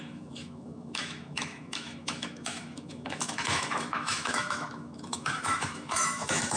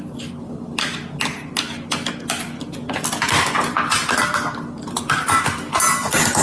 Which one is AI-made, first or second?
first